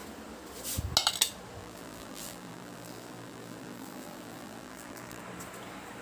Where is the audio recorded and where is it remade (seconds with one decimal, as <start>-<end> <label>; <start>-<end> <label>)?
0.0-1.6 recorded; 1.6-5.2 remade; 5.2-6.0 recorded